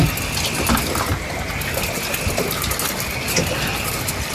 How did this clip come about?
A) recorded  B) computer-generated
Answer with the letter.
A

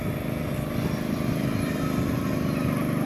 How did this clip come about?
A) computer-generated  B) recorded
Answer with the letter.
B